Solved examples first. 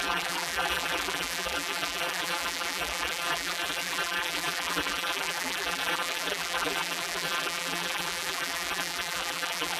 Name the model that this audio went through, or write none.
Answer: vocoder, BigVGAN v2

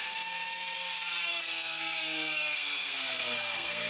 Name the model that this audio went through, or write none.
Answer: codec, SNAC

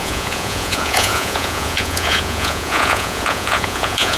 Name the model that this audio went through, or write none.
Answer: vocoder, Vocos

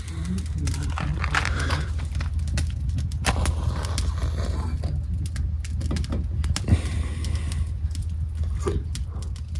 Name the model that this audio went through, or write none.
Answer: none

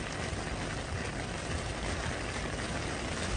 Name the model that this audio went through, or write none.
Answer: none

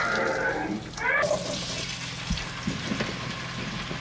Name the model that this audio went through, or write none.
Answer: none